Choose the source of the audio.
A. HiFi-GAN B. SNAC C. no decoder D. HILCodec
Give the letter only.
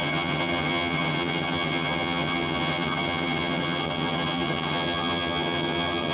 A